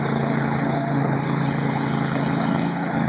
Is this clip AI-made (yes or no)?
yes